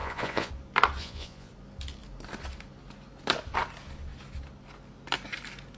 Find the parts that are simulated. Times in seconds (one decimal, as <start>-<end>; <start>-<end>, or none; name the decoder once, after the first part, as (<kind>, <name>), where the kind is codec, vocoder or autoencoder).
0.0-0.5 (vocoder, Vocos); 1.0-1.5